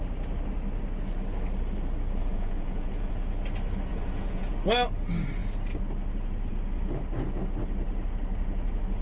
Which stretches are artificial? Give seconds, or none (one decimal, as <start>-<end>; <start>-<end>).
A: 2.2-3.1; 3.9-4.5